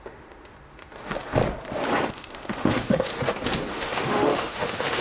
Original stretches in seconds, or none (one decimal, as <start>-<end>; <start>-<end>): 1.4-2.1; 3.1-3.7